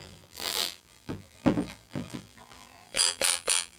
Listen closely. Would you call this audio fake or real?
fake